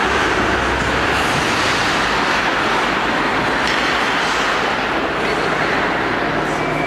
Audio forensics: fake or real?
real